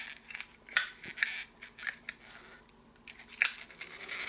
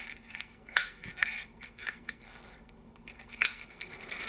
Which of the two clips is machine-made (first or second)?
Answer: second